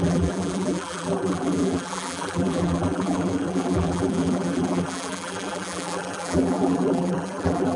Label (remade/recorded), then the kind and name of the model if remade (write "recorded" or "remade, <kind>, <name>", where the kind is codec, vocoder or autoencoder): remade, vocoder, BigVGAN v2